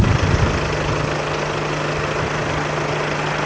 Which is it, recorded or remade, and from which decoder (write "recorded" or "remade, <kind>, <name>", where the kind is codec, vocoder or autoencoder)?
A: recorded